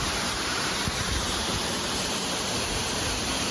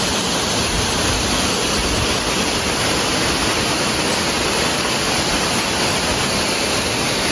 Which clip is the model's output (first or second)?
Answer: first